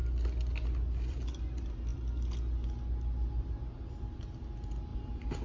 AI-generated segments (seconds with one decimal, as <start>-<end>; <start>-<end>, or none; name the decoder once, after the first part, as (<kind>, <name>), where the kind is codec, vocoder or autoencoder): 4.9-5.4 (vocoder, BigVGAN v2)